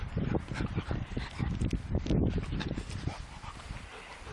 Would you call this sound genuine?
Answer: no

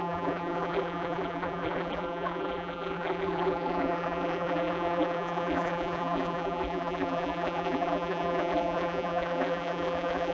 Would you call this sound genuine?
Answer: no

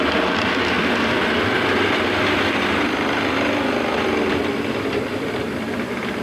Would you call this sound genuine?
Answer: no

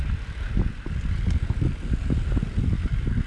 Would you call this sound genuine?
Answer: yes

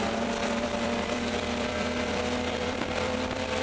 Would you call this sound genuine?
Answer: no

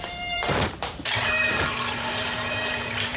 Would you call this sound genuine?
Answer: no